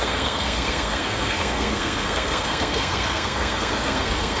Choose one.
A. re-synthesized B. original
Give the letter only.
A